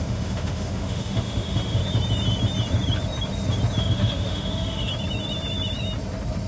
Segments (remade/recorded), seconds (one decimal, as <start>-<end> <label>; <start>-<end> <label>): 0.0-1.8 remade; 1.8-3.8 recorded; 3.8-4.9 remade; 4.9-6.5 recorded